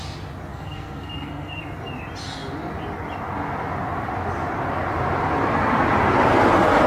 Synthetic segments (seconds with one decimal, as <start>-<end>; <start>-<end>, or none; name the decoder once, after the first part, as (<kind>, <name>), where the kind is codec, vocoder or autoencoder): 0.5-1.6 (codec, SNAC)